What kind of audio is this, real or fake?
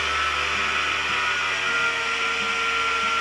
real